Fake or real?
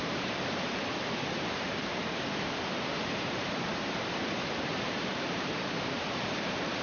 fake